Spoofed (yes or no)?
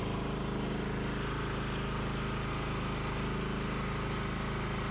no